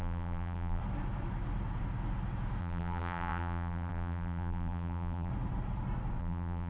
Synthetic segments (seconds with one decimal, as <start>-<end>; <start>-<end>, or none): 0.0-0.8; 2.6-5.3; 6.2-6.7